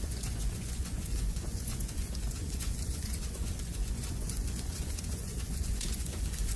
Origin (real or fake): fake